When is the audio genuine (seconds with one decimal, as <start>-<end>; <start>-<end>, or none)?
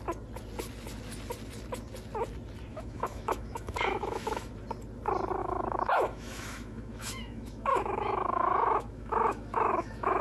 0.0-2.7; 4.5-5.4